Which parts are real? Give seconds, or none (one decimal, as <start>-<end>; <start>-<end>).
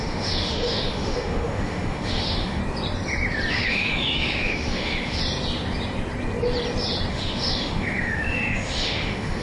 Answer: 2.6-3.5; 5.2-7.1